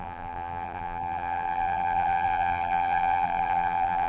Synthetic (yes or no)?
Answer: yes